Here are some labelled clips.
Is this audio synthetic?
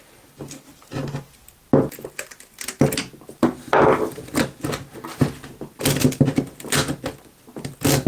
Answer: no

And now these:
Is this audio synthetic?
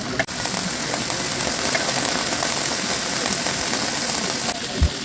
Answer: no